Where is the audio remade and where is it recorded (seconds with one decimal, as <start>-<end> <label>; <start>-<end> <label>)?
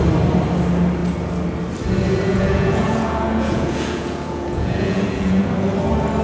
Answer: 0.0-2.3 recorded; 2.3-5.4 remade; 5.4-6.2 recorded